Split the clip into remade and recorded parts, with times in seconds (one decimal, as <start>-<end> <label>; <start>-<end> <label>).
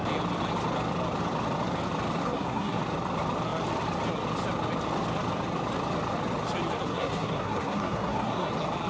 0.0-2.2 recorded; 2.2-2.8 remade; 2.8-6.9 recorded; 6.9-8.5 remade; 8.5-8.9 recorded